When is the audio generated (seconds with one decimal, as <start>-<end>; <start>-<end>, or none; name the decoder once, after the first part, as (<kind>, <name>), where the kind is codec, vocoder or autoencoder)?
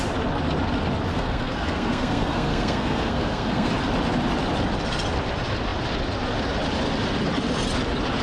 1.1-3.7 (codec, SNAC)